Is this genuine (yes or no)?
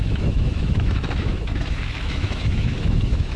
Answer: no